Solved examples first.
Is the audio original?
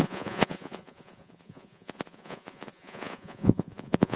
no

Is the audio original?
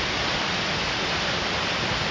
yes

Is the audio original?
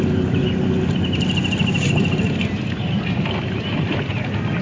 yes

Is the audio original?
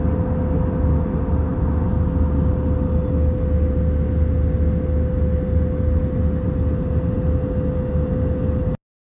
yes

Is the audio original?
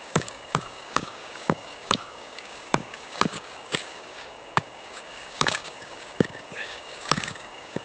no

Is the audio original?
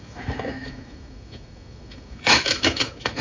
no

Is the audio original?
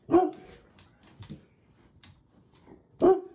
yes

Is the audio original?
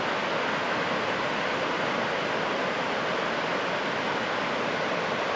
yes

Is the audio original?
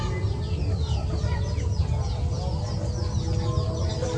yes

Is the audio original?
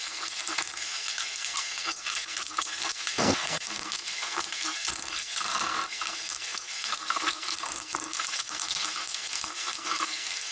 no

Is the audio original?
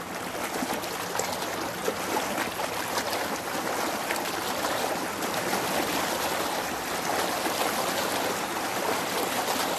yes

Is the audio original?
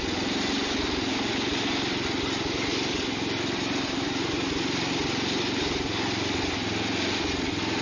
yes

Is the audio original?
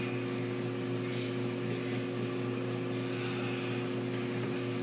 yes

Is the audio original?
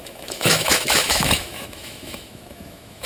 no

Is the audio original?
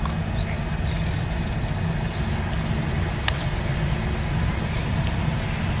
yes